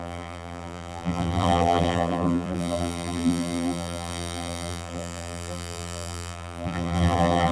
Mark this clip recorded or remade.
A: remade